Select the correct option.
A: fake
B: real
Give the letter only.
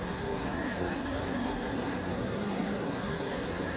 A